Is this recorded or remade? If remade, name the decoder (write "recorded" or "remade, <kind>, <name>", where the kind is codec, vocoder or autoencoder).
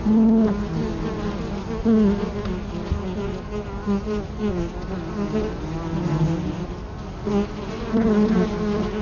recorded